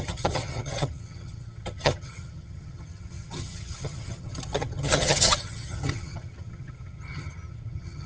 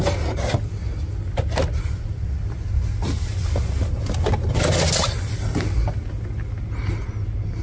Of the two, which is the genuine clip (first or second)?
second